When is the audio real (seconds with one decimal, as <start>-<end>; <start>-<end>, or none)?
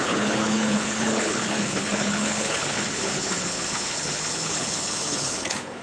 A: none